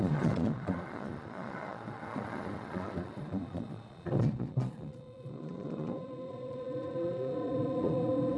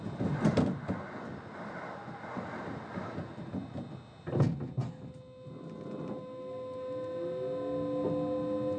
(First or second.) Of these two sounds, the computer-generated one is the first